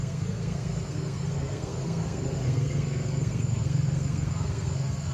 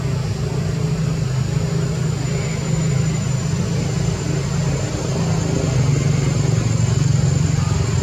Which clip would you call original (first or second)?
second